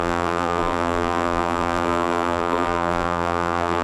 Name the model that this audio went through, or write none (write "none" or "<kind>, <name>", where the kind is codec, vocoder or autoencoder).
vocoder, BigVGAN v2